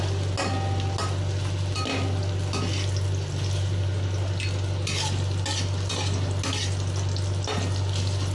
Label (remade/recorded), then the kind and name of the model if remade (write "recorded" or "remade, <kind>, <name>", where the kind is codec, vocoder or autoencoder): recorded